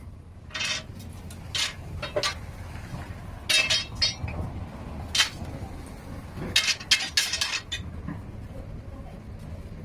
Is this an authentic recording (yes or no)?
yes